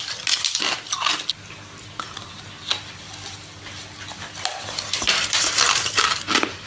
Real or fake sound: real